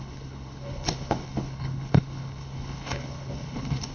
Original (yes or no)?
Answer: no